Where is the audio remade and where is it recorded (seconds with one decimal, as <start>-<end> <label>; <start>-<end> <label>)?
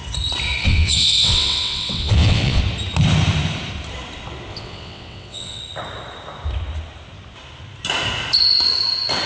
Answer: 0.0-0.6 recorded; 0.6-2.6 remade; 2.6-4.5 recorded; 4.5-5.6 remade; 5.6-9.3 recorded